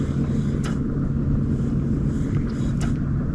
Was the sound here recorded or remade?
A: recorded